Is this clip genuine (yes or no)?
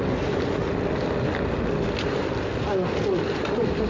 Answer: yes